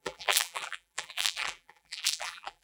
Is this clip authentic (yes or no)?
no